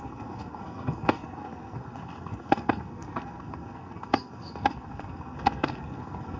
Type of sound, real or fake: fake